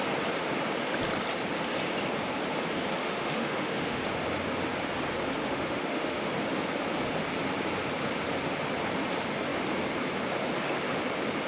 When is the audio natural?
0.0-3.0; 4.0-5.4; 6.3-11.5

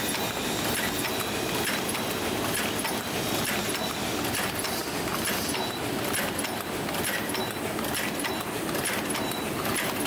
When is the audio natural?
0.0-10.1

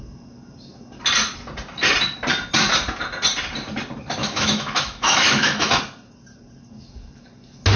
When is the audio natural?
0.0-4.2; 5.8-7.8

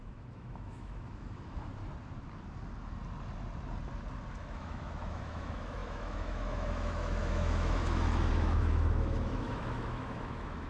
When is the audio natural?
1.7-4.3

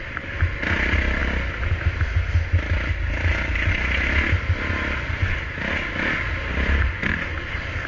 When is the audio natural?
0.0-7.9

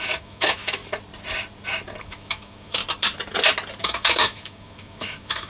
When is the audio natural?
0.8-2.0; 2.8-3.8